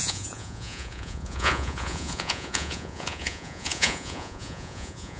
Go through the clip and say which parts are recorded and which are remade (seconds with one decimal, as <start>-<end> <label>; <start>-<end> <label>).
0.0-5.2 remade